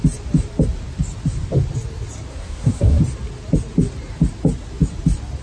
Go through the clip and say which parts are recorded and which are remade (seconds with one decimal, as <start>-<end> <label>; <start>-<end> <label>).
0.0-2.3 recorded; 2.3-3.0 remade; 3.0-5.4 recorded